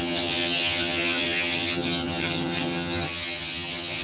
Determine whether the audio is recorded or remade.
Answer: remade